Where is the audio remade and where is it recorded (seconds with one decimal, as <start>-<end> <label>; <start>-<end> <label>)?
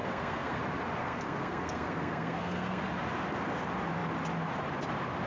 0.0-0.6 remade; 0.6-1.0 recorded; 1.0-2.8 remade; 2.8-5.3 recorded